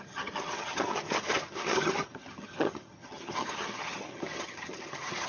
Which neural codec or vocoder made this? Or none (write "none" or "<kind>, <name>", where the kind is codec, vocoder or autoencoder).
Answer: vocoder, HiFi-GAN